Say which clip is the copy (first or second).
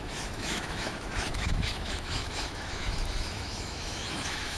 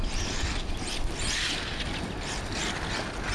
first